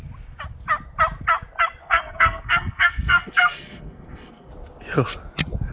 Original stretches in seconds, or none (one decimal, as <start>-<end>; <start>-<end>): 0.0-1.8; 4.5-5.7